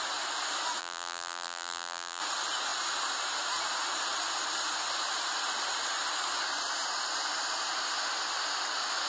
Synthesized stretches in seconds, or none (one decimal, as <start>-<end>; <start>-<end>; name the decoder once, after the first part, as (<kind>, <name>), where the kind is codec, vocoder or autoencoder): 0.8-2.2 (vocoder, BigVGAN v2)